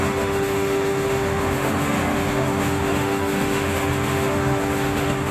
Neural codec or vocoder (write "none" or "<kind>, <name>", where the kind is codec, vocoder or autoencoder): autoencoder, DAC-VAE